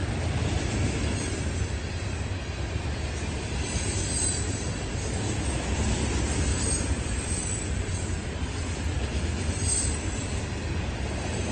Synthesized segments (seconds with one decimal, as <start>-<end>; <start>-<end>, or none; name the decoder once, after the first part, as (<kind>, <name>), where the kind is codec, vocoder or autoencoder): 0.0-0.6 (vocoder, BigVGAN v2); 6.5-10.4